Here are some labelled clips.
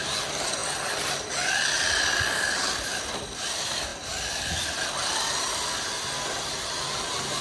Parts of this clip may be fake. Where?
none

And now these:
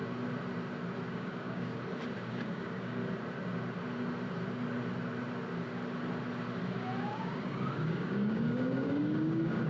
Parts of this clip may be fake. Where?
1.1-1.7 (codec, DAC); 2.3-3.0; 7.0-9.7

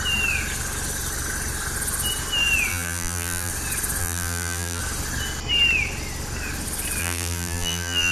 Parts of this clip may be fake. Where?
2.7-3.5 (vocoder, BigVGAN v2); 4.0-4.8; 7.0-8.1

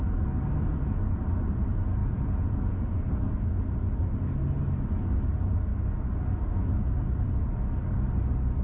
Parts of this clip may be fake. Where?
0.7-1.2 (vocoder, Vocos); 2.0-3.1